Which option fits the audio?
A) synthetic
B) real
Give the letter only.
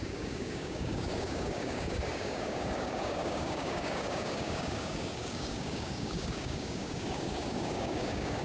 A